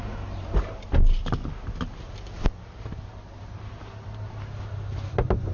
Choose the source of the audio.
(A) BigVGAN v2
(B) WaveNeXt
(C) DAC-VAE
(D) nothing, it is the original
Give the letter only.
D